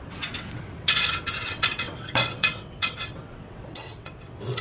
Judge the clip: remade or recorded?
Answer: remade